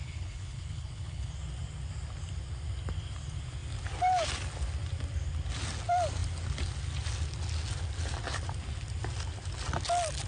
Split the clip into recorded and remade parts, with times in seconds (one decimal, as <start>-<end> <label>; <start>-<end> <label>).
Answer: 0.0-1.3 remade; 1.3-10.3 recorded